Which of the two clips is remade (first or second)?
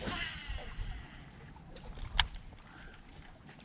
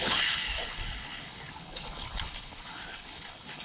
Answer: second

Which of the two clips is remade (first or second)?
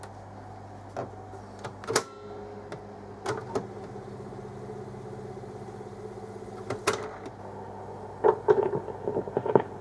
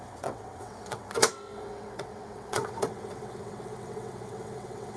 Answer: second